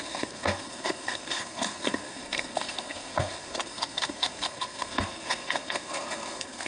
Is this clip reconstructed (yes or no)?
yes